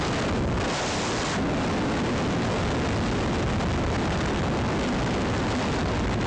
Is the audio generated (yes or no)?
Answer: no